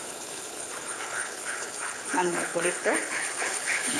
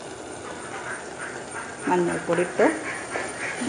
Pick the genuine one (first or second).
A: second